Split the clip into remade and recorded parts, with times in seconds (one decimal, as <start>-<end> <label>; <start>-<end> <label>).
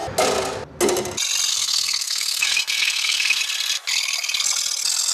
0.0-1.5 recorded; 1.5-3.4 remade; 3.4-5.1 recorded